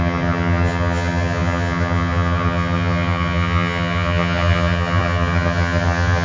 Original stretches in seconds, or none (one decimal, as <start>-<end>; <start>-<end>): none